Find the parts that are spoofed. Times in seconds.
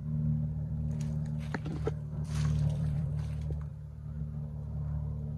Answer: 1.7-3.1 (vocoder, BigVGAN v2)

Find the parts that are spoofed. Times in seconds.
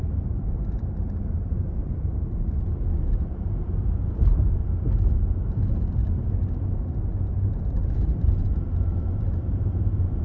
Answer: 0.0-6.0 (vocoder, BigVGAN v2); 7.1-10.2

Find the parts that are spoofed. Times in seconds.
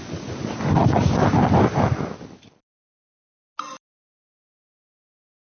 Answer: 1.2-2.8 (vocoder, BigVGAN v2)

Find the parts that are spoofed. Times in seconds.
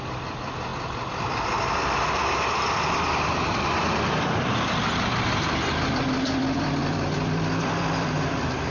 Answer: 0.0-8.7 (vocoder, BigVGAN v2)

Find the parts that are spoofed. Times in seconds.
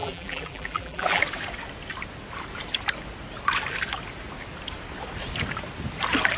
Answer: 0.0-1.2 (vocoder, BigVGAN v2)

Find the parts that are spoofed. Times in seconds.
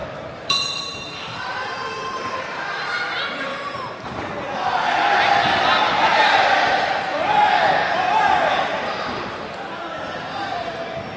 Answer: 0.0-4.2 (vocoder, BigVGAN v2); 6.1-10.7